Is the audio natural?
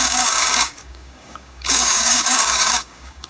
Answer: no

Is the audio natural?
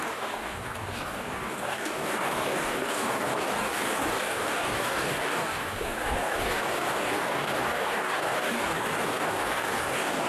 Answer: no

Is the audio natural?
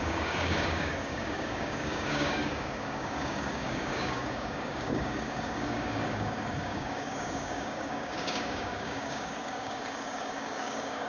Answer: no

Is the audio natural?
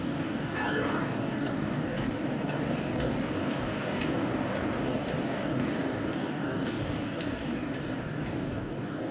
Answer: no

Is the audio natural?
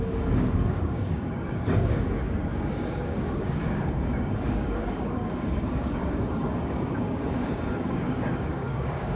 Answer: no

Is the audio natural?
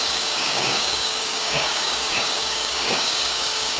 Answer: no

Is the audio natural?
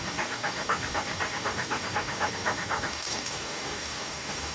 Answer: no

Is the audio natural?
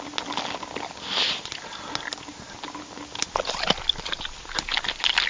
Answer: yes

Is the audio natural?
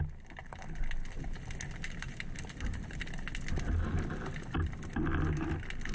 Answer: yes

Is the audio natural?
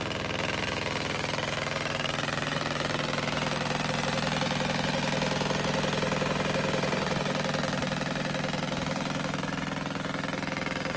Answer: yes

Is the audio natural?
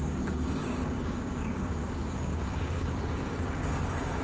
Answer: no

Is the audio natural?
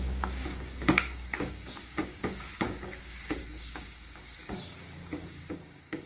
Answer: no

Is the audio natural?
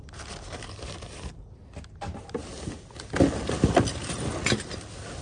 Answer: yes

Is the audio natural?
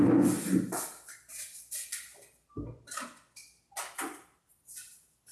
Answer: yes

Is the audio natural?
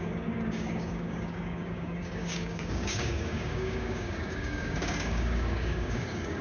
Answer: no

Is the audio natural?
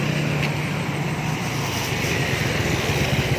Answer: yes